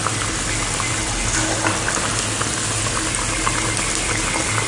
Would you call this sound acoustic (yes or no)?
yes